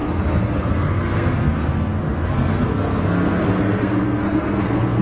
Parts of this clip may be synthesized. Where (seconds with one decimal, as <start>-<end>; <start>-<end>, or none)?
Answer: 0.0-5.0